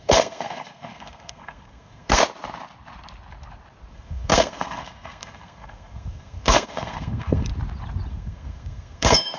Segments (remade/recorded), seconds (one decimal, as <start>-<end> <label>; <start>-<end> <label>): 0.0-2.2 remade; 2.2-3.9 recorded; 3.9-7.5 remade; 7.5-8.1 recorded; 8.1-9.4 remade